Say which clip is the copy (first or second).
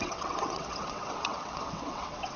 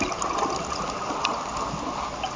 first